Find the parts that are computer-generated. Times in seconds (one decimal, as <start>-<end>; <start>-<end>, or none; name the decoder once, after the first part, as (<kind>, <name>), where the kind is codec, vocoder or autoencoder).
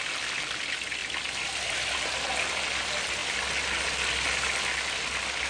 none